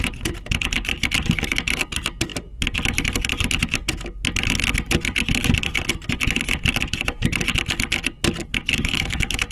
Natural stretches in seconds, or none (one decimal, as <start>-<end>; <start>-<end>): 0.0-8.4